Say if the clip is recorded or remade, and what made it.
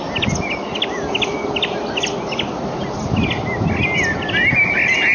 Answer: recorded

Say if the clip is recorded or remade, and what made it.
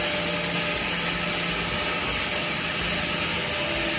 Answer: recorded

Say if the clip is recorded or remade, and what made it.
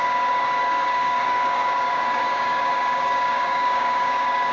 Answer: remade, codec, DAC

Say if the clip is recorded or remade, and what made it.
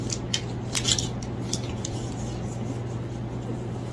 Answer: recorded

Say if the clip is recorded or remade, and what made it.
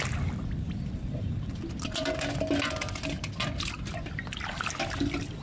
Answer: recorded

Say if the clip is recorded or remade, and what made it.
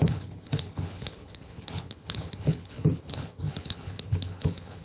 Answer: remade, codec, HILCodec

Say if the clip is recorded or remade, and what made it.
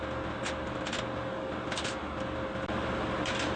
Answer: recorded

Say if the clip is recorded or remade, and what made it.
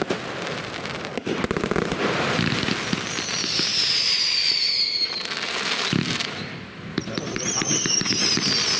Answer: remade, vocoder, BigVGAN v2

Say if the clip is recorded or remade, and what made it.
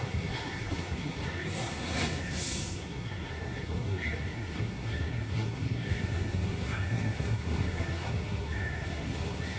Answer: remade, codec, SNAC